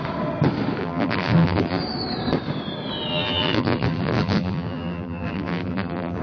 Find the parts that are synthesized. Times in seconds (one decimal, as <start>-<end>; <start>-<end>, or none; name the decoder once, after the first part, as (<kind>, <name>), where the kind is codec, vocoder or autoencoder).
0.8-1.8 (vocoder, BigVGAN v2); 3.1-6.2